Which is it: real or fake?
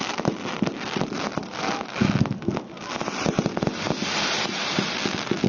real